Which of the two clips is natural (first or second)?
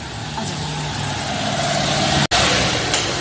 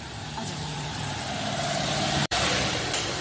first